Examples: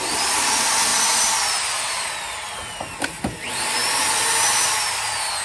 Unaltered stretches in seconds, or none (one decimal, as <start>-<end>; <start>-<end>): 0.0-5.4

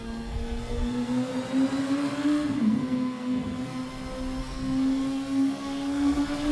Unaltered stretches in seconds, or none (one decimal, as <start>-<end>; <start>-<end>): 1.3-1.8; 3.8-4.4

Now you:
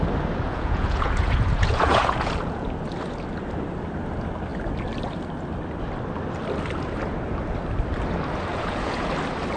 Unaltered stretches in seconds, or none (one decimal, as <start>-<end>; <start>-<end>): 0.0-0.5; 2.7-8.5; 9.1-9.6

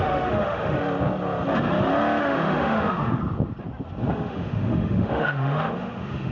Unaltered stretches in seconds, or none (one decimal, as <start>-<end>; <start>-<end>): 0.8-2.2; 3.2-4.1